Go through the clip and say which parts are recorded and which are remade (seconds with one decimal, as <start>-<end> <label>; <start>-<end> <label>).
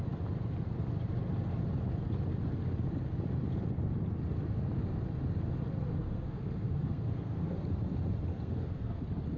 0.0-5.9 recorded; 5.9-7.7 remade; 7.7-8.3 recorded; 8.3-9.0 remade; 9.0-9.4 recorded